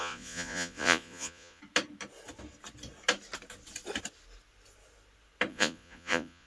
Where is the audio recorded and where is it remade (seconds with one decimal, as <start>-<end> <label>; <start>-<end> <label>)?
0.0-1.6 remade; 1.6-5.5 recorded; 5.5-6.5 remade